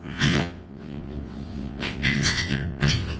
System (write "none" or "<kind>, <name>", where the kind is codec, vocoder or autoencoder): vocoder, WaveNeXt